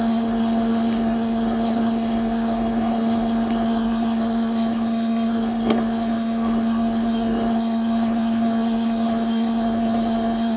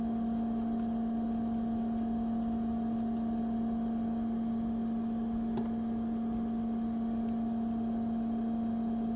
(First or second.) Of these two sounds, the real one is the second